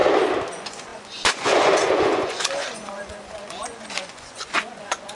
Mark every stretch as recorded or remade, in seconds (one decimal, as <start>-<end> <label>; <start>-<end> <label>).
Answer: 0.0-0.5 recorded; 0.5-5.1 remade